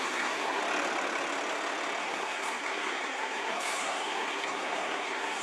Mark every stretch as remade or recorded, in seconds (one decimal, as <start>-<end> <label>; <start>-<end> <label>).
0.0-0.6 remade; 0.6-2.0 recorded; 2.0-5.4 remade